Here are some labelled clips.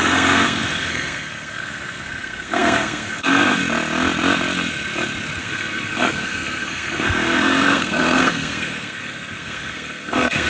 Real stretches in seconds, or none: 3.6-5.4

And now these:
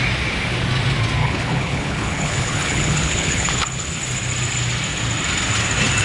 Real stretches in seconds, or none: 0.0-1.2; 4.0-6.0

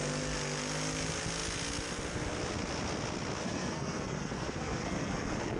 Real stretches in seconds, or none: 0.0-3.4

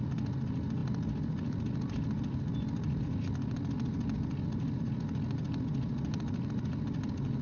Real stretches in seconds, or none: 0.0-7.4

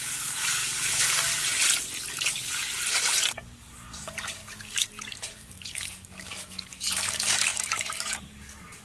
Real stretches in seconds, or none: 1.3-2.1; 2.6-3.3

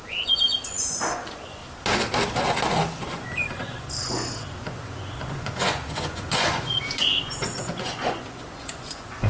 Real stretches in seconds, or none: 1.6-3.1

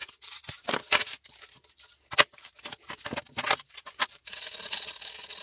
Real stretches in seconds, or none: 0.4-3.6; 4.2-5.4